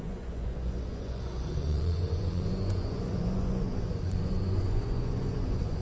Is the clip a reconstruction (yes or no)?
yes